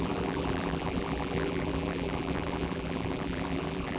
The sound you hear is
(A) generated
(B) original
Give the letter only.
A